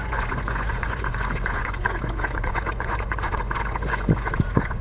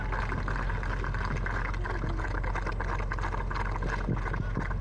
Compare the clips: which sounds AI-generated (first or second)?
first